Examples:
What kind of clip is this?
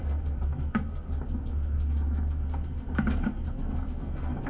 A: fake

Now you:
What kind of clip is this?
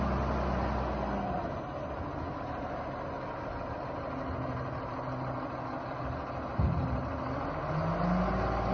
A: real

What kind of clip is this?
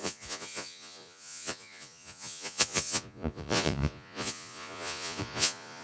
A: fake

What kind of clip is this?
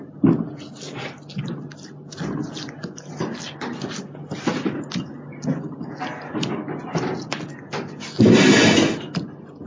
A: real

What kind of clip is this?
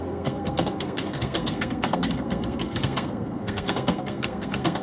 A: fake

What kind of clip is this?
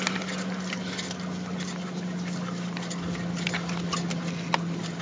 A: real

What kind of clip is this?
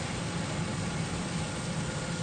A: real